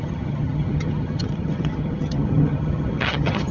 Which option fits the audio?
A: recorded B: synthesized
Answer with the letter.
B